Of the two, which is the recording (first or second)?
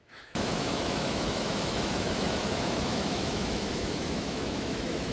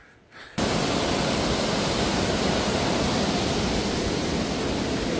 second